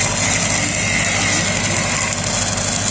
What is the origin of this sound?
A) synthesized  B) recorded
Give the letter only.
B